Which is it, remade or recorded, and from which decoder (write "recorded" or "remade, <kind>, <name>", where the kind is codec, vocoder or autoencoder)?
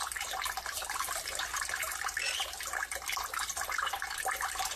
remade, vocoder, BigVGAN v2